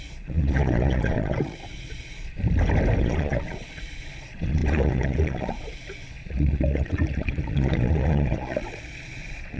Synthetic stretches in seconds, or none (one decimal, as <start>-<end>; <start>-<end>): 0.0-2.4; 3.0-9.6